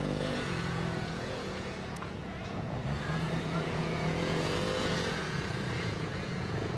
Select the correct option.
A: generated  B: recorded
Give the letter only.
A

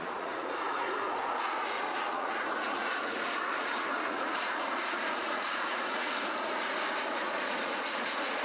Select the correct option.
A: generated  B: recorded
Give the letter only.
A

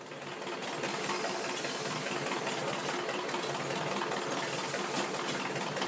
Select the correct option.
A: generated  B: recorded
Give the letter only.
B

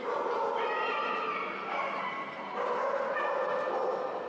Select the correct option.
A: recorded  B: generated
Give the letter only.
A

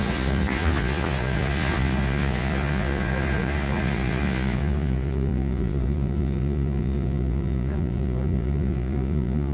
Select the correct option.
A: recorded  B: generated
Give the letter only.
B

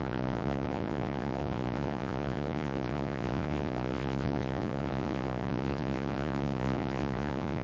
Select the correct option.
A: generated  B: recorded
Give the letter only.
A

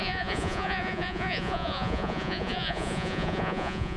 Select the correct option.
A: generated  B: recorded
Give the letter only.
A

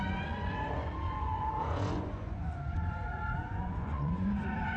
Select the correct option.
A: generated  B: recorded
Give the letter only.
A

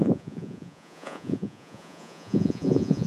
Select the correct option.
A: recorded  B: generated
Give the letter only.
B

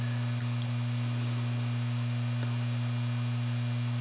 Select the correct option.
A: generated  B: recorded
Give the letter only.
B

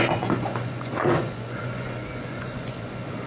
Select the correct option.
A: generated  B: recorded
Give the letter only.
A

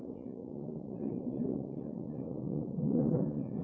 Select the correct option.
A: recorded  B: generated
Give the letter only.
B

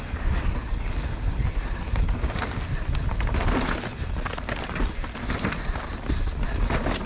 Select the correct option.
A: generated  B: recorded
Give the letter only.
B